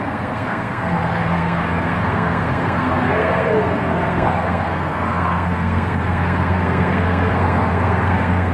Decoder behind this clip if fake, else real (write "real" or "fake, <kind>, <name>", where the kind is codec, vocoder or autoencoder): fake, codec, SNAC